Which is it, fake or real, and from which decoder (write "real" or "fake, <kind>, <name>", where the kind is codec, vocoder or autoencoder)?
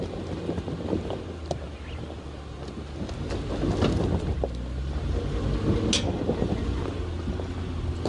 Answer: real